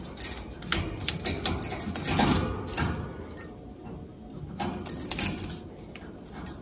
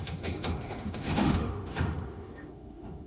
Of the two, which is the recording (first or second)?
first